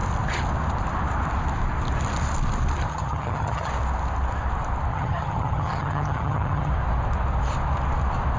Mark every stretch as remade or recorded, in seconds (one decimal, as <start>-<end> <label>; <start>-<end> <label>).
0.0-2.9 recorded; 2.9-3.7 remade; 3.7-4.9 recorded; 4.9-6.7 remade; 6.7-8.4 recorded